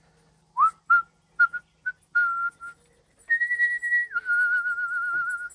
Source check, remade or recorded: recorded